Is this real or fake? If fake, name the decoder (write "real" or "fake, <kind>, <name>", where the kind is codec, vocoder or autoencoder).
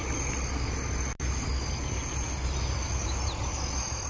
real